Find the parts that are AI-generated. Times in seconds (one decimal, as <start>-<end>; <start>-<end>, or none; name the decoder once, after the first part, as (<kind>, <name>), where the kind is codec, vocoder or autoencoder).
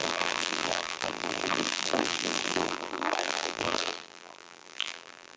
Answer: 0.0-5.4 (vocoder, BigVGAN v2)